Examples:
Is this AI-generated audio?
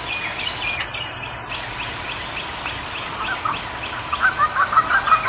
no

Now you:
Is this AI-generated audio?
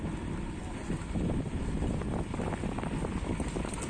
no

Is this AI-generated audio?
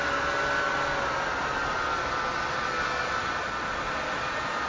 no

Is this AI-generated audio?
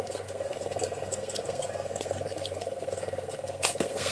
yes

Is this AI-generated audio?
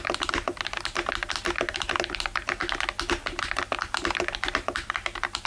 yes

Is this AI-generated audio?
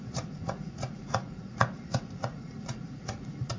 yes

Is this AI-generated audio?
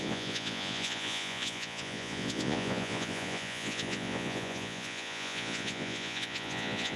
yes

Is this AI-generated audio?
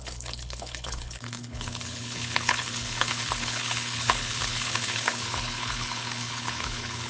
yes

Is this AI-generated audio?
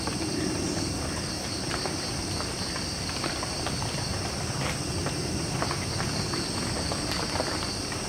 yes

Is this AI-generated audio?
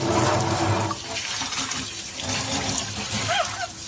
no